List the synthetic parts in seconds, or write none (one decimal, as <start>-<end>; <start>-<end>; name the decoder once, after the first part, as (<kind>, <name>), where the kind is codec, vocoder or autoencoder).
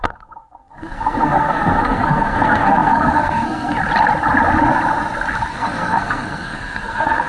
0.0-3.8 (codec, SNAC); 5.5-7.3